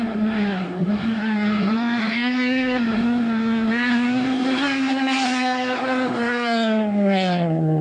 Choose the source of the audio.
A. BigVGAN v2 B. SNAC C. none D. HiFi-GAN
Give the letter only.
B